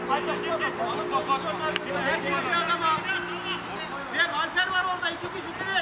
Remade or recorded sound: recorded